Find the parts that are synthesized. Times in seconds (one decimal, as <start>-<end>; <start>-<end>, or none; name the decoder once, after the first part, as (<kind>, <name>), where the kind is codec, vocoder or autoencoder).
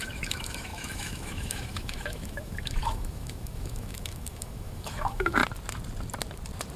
0.0-5.4 (autoencoder, DAC-VAE)